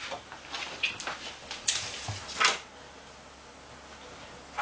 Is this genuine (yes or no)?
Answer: yes